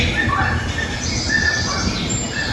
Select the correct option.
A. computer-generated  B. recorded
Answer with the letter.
B